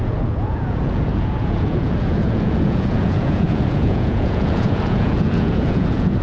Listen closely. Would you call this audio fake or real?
fake